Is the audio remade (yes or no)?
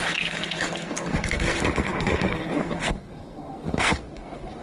yes